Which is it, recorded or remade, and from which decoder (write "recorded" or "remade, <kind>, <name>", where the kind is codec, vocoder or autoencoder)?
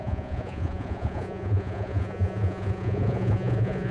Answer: remade, vocoder, Vocos